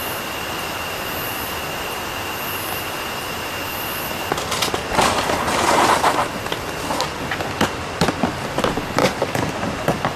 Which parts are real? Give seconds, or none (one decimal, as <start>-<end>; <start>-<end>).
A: 0.0-9.0; 9.5-10.2